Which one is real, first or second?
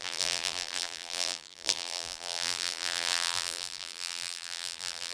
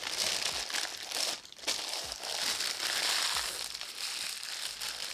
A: second